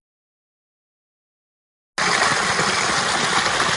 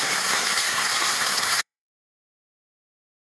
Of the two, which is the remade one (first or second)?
second